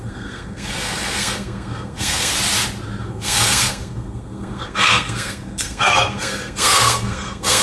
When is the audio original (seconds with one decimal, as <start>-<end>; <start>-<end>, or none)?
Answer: 2.3-3.0